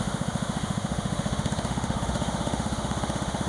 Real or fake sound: fake